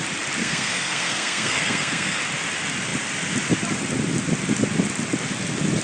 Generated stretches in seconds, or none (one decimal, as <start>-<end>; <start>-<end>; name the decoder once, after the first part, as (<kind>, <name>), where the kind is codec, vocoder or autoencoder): 0.4-2.2 (codec, SNAC)